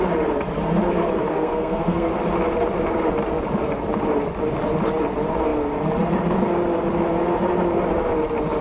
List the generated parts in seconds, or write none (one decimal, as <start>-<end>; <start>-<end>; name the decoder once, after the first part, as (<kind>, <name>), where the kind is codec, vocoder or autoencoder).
1.3-2.1 (codec, SNAC)